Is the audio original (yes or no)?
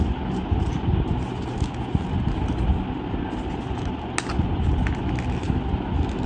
yes